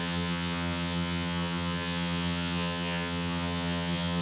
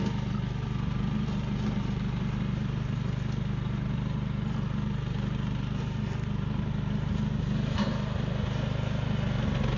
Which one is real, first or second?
second